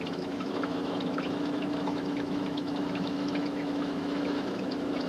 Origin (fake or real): fake